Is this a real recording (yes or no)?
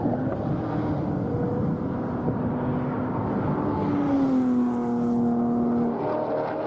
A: yes